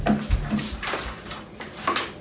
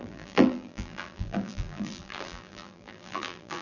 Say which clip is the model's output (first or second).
second